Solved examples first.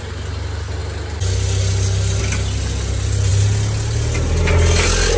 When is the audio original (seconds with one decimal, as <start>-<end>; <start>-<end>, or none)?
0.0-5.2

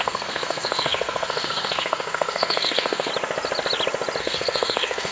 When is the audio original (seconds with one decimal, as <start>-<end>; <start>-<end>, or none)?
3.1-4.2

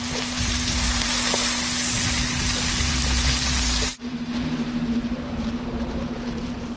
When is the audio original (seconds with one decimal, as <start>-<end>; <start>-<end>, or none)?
1.1-2.8

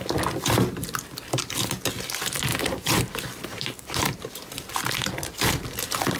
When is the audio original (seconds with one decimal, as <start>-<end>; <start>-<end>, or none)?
0.0-2.5; 4.3-6.2

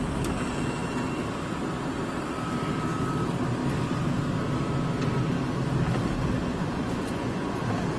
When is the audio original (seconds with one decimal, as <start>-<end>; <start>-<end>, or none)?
0.0-6.4; 7.6-8.0

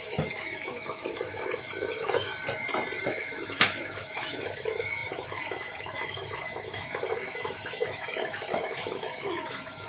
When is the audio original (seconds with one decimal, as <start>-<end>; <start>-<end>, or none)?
2.3-3.0